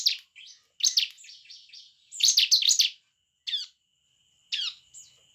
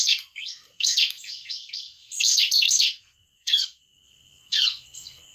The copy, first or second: second